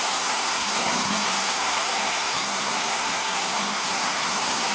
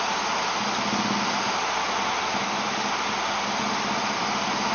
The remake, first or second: first